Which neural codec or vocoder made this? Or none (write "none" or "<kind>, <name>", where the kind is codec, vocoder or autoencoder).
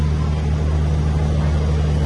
none